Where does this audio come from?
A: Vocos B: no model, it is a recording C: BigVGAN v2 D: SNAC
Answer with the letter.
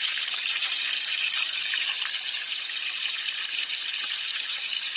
C